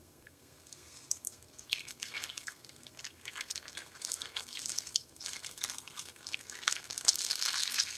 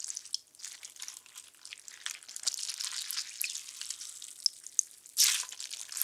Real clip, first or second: second